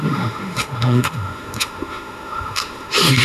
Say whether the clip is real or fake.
fake